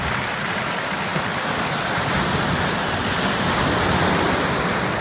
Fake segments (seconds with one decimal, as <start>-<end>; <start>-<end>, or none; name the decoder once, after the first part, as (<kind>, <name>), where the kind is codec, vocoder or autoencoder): none